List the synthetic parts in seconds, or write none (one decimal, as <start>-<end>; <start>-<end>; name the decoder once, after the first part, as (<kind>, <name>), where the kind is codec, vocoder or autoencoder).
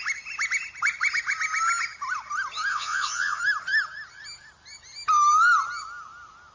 2.7-3.4 (vocoder, WaveNeXt)